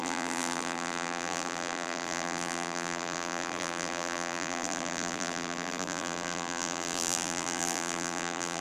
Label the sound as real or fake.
fake